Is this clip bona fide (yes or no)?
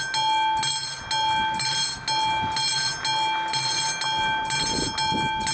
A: yes